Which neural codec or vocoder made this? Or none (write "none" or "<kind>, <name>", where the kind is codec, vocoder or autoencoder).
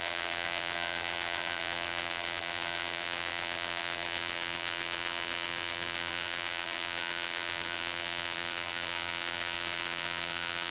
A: vocoder, BigVGAN v2